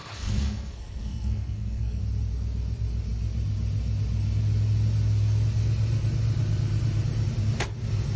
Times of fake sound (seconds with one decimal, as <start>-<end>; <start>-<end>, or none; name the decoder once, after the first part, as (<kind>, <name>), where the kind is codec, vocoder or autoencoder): 0.0-2.0 (codec, SNAC)